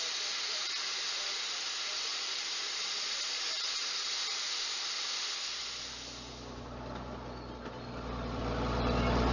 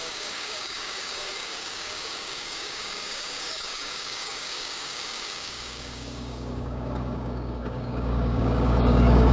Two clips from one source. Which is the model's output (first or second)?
second